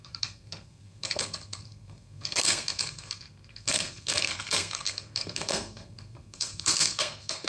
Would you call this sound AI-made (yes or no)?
yes